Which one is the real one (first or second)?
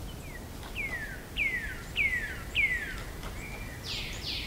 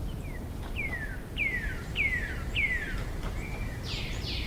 first